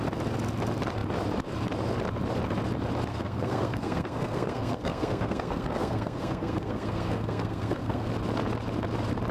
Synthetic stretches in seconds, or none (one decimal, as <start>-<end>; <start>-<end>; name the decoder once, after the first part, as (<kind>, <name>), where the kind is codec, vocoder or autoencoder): 3.1-8.1 (codec, SNAC)